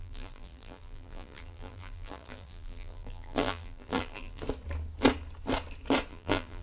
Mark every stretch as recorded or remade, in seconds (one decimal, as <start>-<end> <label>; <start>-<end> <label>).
0.0-4.4 remade; 4.4-6.1 recorded; 6.1-6.6 remade